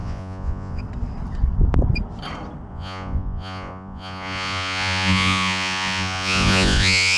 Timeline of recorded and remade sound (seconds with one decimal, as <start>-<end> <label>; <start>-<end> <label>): 0.0-0.8 remade; 0.8-2.7 recorded; 2.7-7.2 remade